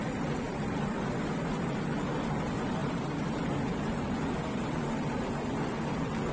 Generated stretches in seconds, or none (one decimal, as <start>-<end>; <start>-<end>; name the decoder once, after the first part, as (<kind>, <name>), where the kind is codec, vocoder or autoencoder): 0.0-2.8 (vocoder, BigVGAN v2)